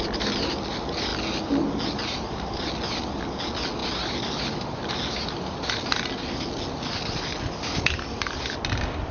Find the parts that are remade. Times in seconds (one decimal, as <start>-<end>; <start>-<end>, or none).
none